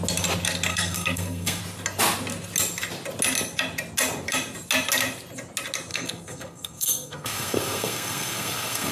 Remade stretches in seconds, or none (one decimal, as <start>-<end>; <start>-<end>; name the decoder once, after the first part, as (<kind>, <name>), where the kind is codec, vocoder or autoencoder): 0.7-1.6 (codec, SNAC); 5.9-8.9